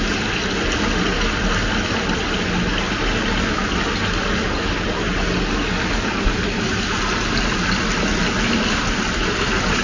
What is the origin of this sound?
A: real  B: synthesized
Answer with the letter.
A